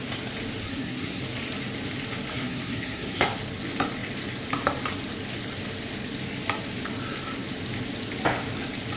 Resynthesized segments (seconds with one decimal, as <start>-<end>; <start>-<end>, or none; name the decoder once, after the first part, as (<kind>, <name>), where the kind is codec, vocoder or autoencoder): 0.6-1.2 (codec, SNAC); 2.3-3.2